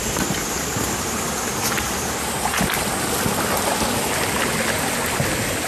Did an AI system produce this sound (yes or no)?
no